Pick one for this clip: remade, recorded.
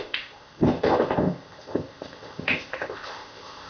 remade